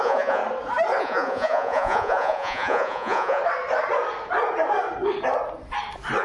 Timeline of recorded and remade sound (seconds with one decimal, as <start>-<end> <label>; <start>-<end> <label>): 0.0-0.4 remade; 0.4-1.0 recorded; 1.0-3.4 remade; 3.4-6.2 recorded